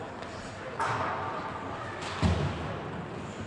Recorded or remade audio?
recorded